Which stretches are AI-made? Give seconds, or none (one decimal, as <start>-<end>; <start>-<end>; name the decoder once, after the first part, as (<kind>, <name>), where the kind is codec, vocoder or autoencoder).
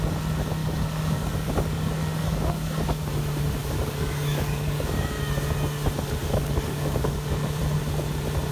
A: 0.6-3.1 (codec, DAC); 3.6-5.2; 6.2-7.6